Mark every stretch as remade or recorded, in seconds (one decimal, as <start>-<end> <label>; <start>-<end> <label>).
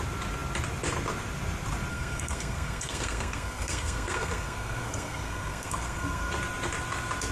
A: 0.0-1.9 recorded; 1.9-6.3 remade; 6.3-7.3 recorded